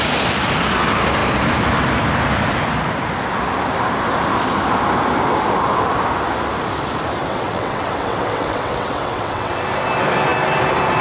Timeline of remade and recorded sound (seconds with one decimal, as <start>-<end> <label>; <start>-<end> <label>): 0.0-7.2 recorded; 7.2-9.5 remade; 9.5-11.0 recorded